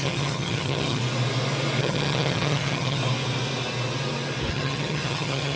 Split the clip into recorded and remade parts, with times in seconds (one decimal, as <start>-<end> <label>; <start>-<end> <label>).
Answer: 0.0-1.0 remade; 1.0-1.8 recorded; 1.8-3.0 remade; 3.0-4.5 recorded; 4.5-5.6 remade